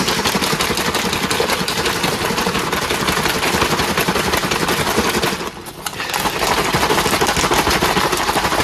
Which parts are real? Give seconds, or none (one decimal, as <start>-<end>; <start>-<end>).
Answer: 0.0-8.6